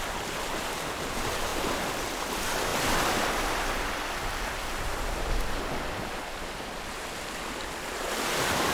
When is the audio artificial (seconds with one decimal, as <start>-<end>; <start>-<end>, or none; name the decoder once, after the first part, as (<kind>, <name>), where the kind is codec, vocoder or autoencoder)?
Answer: 0.0-1.5 (vocoder, BigVGAN v2); 2.2-2.7; 7.9-8.7